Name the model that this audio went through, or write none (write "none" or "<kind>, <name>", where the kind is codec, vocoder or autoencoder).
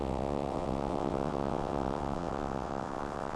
vocoder, WaveNeXt